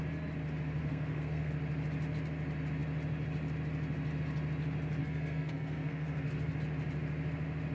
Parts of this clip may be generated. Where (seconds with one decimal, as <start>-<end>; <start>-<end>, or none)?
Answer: 0.8-1.5; 5.0-6.5